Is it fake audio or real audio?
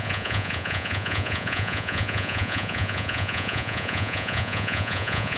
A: fake